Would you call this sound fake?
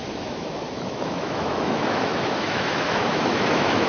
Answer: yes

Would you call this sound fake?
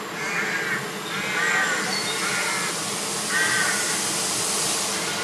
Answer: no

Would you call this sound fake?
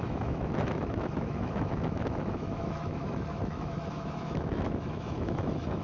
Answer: yes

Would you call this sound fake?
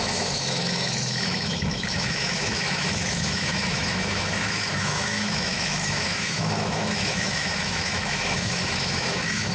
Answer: yes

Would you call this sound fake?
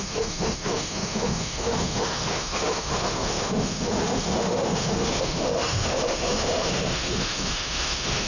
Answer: yes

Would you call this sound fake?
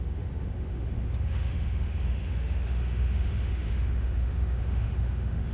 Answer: yes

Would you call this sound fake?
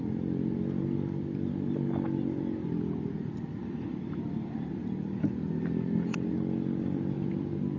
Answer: no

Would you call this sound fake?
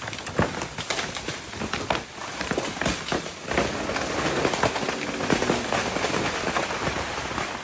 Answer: no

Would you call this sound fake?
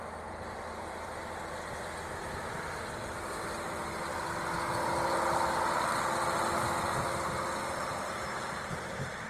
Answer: no